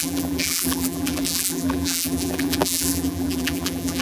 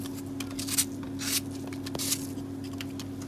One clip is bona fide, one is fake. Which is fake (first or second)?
first